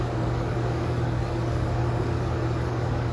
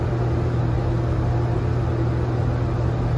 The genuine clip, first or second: second